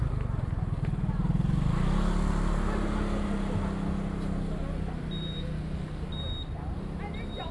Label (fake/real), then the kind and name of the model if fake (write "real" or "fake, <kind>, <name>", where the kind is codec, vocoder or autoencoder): real